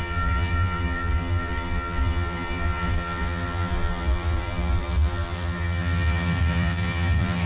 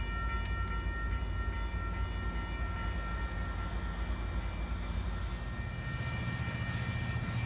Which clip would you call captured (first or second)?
second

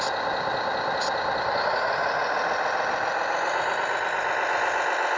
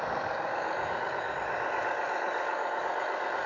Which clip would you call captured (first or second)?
first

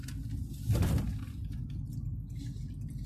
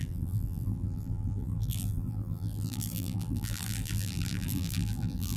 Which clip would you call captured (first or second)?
first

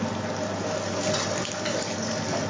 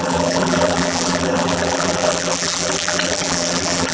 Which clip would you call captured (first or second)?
first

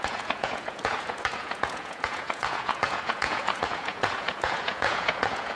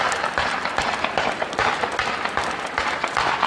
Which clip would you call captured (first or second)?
second